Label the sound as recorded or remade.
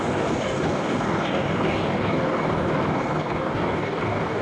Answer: remade